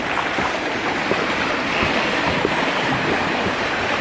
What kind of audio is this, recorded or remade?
recorded